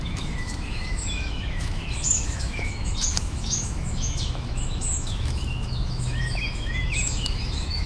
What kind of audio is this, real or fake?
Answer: fake